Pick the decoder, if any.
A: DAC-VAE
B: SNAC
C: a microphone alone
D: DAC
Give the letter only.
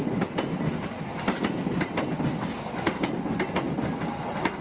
C